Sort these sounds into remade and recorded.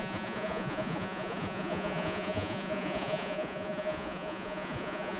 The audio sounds remade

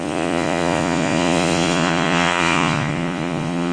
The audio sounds remade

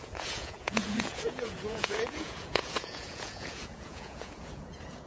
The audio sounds remade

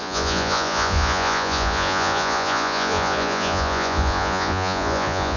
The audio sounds remade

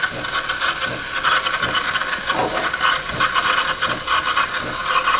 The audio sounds recorded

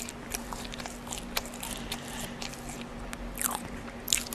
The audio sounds recorded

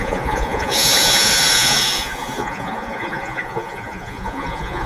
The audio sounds remade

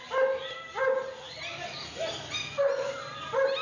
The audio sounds recorded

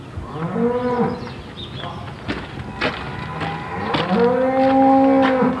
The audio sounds recorded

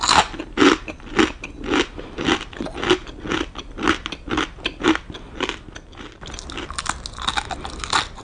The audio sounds recorded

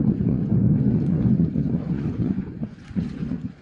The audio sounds remade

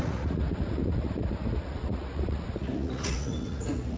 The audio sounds remade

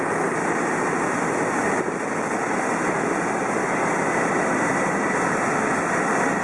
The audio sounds recorded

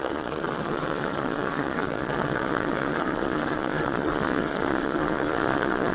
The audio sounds remade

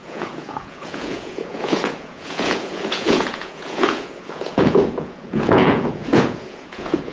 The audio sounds remade